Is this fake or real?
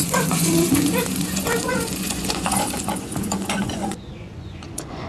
fake